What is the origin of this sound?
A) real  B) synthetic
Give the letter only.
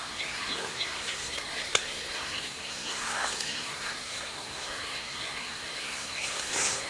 B